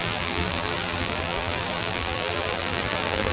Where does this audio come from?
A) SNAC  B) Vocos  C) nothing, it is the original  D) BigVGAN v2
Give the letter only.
D